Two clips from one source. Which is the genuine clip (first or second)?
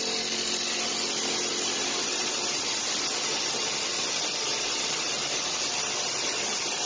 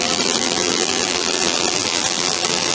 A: first